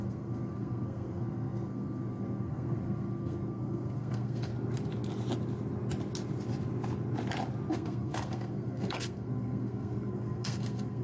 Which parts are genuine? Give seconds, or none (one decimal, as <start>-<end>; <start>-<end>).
4.5-7.7